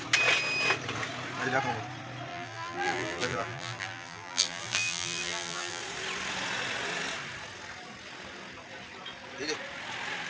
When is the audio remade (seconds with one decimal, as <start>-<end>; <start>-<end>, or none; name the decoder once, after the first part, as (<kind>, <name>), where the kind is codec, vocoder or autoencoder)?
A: 2.3-5.8 (vocoder, BigVGAN v2)